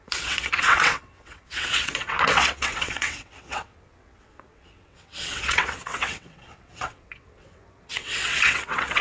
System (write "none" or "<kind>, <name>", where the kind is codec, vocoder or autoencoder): vocoder, WaveNeXt